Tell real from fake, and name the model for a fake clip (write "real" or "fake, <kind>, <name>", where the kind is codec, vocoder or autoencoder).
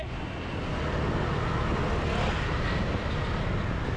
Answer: real